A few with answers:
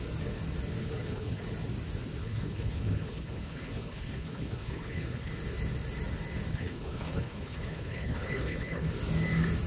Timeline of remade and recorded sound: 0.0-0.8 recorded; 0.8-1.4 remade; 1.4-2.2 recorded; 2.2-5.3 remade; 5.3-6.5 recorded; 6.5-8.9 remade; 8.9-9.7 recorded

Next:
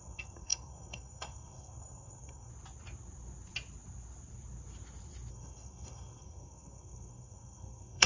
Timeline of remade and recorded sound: 0.0-2.5 remade; 2.5-5.3 recorded; 5.3-8.1 remade